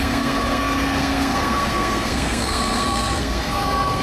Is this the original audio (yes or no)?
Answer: no